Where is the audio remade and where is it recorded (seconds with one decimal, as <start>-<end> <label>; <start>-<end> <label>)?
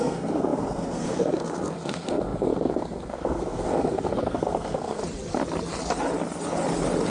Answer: 0.0-5.0 remade; 5.0-7.1 recorded